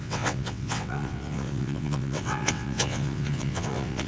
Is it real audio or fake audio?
fake